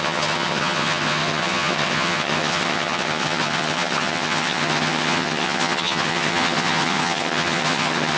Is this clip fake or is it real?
fake